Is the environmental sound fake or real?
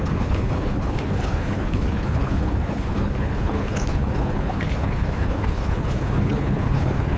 fake